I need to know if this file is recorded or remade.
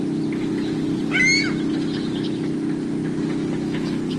recorded